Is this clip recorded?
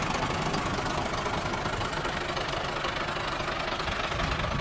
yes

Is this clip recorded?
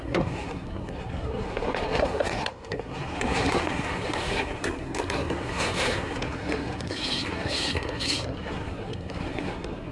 no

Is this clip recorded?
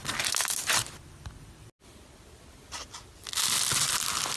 yes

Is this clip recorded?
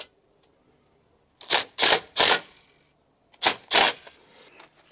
yes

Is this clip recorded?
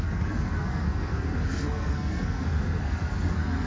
no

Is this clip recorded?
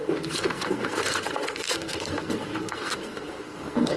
no